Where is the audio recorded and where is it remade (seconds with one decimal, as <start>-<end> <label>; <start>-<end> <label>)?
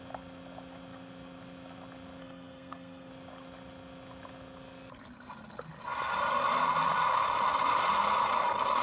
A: 0.0-2.2 recorded; 2.2-3.1 remade; 3.1-8.8 recorded